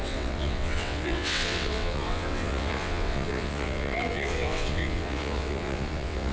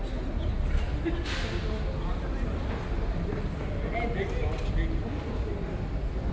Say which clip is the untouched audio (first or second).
second